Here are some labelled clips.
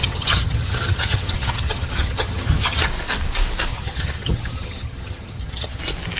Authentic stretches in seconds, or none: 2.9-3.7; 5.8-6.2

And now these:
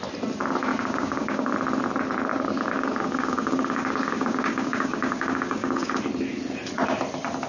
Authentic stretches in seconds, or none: 0.0-0.7; 1.5-2.3; 5.9-7.5